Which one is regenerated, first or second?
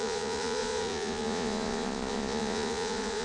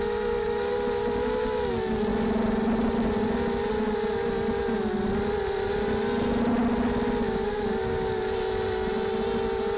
first